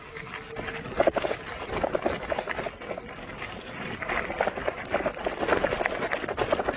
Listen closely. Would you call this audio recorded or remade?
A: recorded